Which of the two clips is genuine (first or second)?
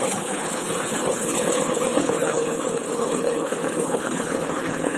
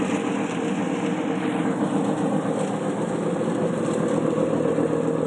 second